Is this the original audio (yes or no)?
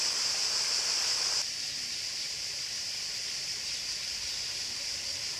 yes